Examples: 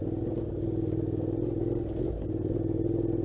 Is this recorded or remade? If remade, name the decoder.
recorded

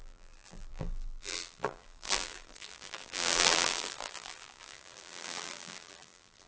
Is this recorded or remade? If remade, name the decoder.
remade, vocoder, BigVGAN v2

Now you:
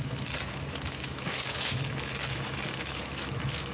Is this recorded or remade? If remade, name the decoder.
remade, autoencoder, DAC-VAE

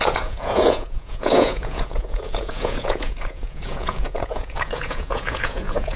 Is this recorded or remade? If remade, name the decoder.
remade, vocoder, Vocos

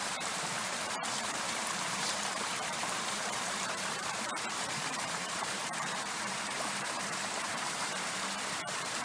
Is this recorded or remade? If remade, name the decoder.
remade, vocoder, BigVGAN v2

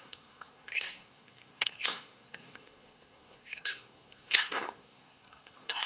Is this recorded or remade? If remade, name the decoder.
remade, codec, SNAC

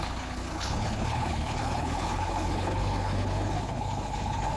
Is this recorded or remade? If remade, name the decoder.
remade, codec, HILCodec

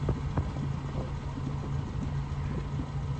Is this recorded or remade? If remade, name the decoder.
recorded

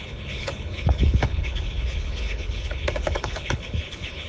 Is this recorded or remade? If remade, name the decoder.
remade, codec, HILCodec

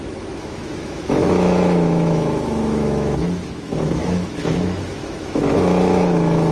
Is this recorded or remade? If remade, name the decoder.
remade, autoencoder, DAC-VAE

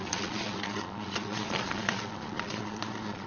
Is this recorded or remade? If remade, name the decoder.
remade, vocoder, Vocos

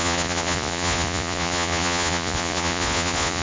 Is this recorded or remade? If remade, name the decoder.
remade, vocoder, Vocos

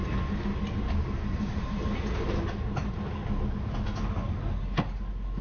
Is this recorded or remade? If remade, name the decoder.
recorded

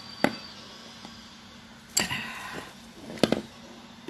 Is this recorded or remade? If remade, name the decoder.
recorded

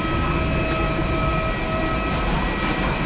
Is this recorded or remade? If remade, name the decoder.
recorded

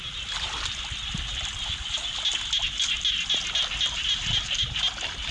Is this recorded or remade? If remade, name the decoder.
recorded